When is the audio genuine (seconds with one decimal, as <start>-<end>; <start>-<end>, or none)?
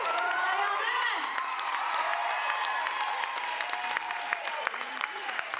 2.1-4.5